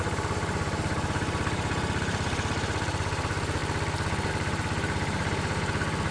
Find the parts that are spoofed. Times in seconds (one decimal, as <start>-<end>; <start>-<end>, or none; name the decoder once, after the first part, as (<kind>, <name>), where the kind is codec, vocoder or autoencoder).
0.0-3.6 (vocoder, BigVGAN v2); 4.3-6.1